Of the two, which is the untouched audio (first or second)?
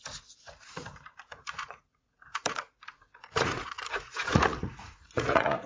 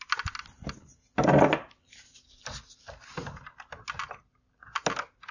second